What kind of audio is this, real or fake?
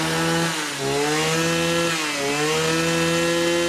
real